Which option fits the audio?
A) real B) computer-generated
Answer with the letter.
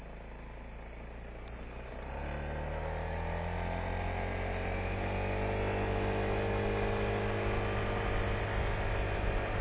A